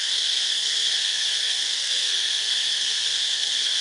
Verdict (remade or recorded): remade